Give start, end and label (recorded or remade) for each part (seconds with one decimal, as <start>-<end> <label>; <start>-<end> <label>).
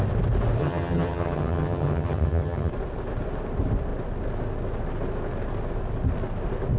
0.0-0.6 recorded; 0.6-2.7 remade; 2.7-6.8 recorded